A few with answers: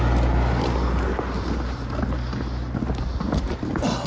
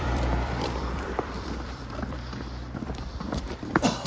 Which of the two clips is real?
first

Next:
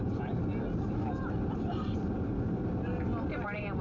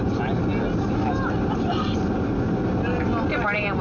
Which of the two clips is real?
second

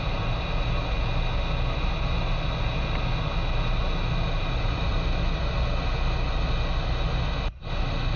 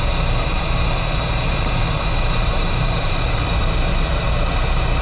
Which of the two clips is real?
first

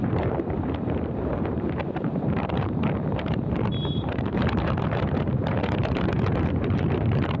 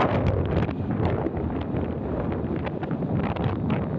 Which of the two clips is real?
second